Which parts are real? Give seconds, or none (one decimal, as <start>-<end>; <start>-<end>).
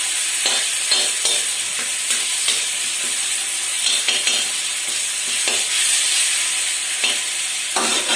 0.0-8.2